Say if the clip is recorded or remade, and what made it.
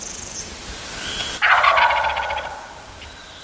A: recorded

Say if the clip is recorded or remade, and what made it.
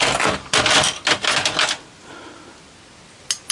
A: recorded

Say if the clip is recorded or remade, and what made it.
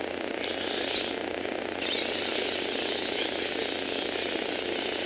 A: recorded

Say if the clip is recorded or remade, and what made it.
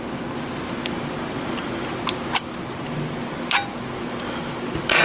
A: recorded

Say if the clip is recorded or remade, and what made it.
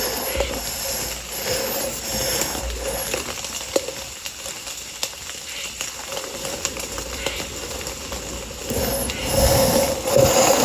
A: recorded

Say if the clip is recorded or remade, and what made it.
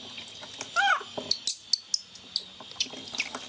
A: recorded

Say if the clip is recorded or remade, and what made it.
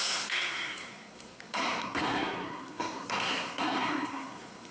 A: remade, codec, SNAC